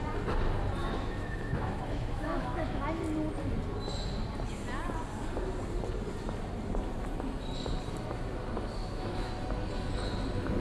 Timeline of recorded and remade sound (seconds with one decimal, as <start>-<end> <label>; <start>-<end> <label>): 0.0-0.8 recorded; 0.8-2.8 remade; 2.8-8.8 recorded; 8.8-9.3 remade; 9.3-10.6 recorded